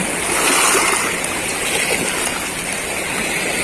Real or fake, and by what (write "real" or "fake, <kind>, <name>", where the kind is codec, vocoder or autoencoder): real